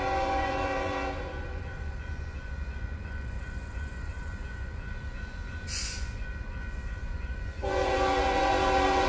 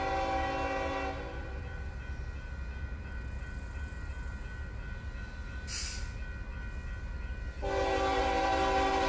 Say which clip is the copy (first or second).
first